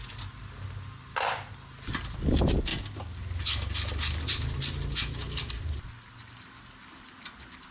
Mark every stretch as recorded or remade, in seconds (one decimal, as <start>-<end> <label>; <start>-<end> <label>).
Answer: 0.0-7.7 recorded